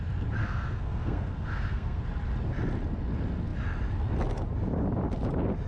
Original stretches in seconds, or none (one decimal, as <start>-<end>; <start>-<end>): 0.0-0.4; 2.0-5.7